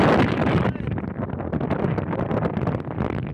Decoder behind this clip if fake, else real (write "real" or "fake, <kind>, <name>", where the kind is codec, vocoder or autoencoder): real